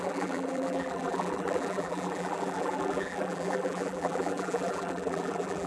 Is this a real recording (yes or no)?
no